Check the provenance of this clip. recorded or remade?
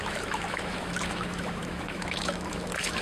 remade